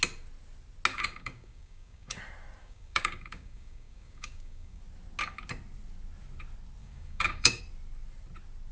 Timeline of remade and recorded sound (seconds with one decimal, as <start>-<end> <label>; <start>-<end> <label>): 0.0-0.9 recorded; 0.9-2.2 remade; 2.2-2.6 recorded; 2.6-4.8 remade; 4.8-6.8 recorded; 6.8-7.6 remade; 7.6-8.7 recorded